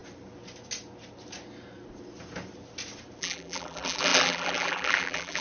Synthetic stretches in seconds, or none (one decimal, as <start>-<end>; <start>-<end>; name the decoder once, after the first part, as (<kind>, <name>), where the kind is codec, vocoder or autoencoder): 3.2-5.4 (vocoder, BigVGAN v2)